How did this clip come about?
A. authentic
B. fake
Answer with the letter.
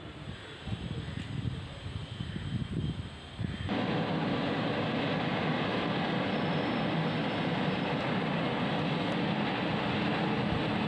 A